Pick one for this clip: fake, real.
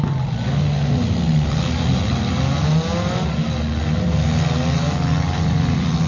real